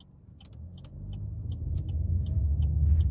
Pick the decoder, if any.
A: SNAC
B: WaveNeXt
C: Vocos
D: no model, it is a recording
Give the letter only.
D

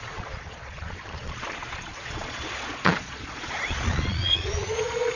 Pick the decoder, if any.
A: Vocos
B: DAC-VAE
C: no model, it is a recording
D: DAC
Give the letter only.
A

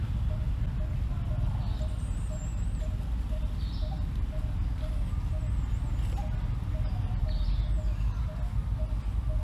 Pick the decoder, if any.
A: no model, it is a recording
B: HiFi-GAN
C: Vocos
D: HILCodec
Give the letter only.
A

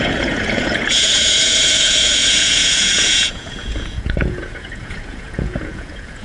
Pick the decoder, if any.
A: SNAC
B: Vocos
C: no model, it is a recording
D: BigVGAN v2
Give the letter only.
B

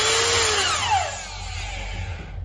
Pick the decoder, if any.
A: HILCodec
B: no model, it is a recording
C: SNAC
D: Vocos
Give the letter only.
B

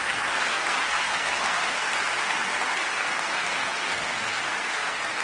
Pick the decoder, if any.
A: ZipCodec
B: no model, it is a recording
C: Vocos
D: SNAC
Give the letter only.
D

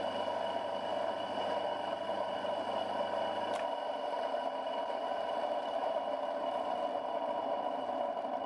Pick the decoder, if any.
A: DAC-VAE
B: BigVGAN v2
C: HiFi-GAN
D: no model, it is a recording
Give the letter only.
D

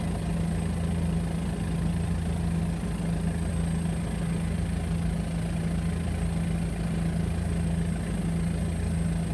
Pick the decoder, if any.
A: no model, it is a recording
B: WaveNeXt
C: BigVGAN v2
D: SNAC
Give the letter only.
A